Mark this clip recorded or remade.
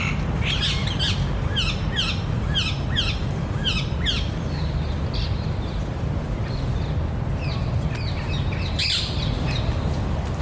recorded